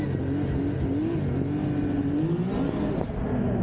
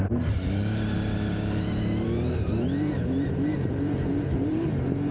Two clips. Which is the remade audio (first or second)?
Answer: second